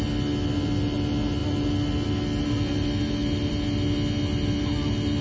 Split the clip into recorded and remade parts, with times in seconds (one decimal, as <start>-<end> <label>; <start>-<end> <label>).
0.0-5.2 recorded